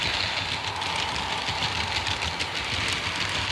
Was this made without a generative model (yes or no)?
yes